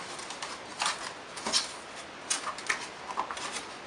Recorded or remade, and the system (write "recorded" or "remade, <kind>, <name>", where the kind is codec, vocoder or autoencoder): recorded